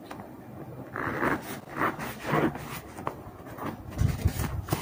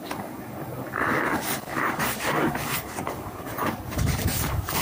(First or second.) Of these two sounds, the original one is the first